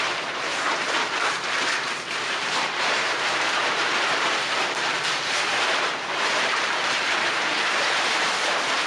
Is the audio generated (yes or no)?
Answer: yes